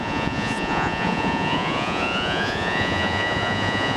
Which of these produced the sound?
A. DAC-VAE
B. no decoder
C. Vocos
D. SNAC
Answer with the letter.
C